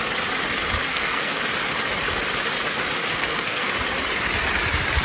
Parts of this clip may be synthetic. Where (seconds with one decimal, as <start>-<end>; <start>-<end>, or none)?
0.9-1.4; 3.2-3.7